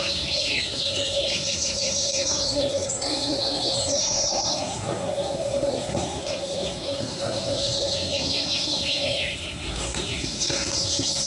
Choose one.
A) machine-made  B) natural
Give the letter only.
A